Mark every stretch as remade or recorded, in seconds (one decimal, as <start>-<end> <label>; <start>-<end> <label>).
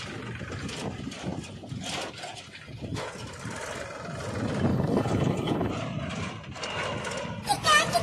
0.0-4.7 recorded; 4.7-5.7 remade; 5.7-8.0 recorded